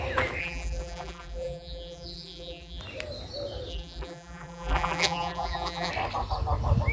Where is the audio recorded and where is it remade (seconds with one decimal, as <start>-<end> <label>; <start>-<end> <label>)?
0.0-0.4 recorded; 0.4-2.8 remade; 2.8-3.7 recorded; 3.7-5.9 remade; 5.9-6.9 recorded